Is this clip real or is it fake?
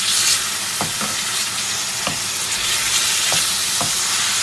real